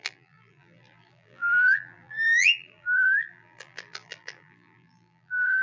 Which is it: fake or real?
fake